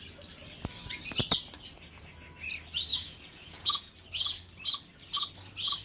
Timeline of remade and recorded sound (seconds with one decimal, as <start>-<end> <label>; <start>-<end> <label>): 0.0-2.9 recorded; 2.9-3.9 remade; 3.9-5.8 recorded